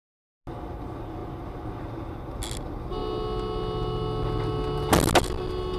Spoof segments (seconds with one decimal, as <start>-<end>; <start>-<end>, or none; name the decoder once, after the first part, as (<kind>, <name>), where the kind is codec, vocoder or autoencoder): none